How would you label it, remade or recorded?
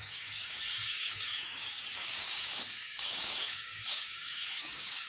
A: remade